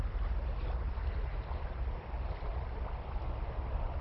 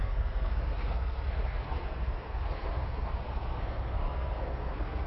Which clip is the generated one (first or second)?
second